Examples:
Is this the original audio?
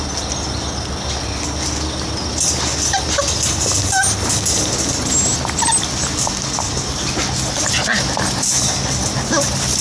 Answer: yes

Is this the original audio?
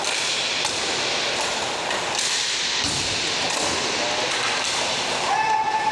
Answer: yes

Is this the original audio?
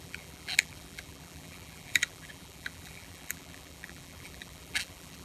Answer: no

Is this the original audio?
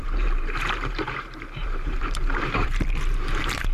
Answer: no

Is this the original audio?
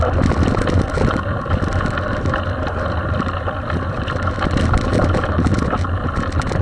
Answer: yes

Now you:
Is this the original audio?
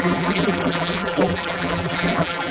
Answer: no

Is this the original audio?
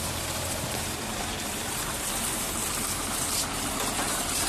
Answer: no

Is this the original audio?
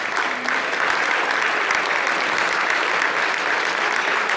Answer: yes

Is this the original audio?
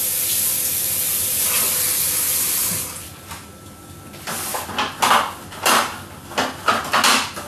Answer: yes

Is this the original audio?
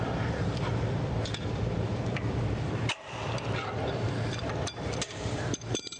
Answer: no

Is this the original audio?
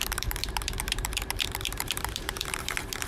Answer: no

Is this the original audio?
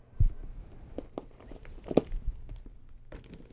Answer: yes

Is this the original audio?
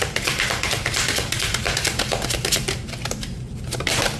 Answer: no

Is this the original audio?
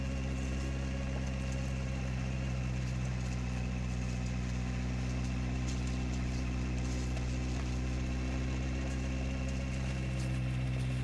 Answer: yes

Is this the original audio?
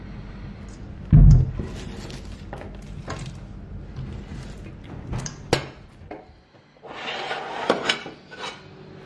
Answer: yes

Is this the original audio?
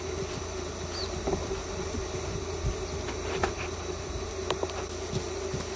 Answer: yes